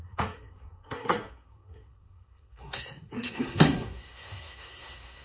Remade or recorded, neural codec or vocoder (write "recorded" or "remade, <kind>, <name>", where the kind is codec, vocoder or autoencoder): remade, codec, SNAC